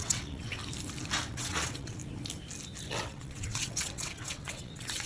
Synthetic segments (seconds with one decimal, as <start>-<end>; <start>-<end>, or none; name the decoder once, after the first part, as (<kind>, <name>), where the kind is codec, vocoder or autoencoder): 0.0-0.6 (vocoder, WaveNeXt); 1.3-2.0; 2.9-5.1